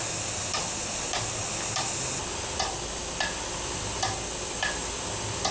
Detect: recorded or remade recorded